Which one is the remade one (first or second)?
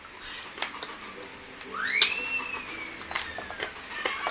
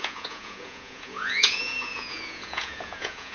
second